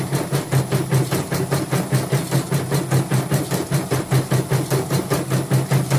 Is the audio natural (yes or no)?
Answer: yes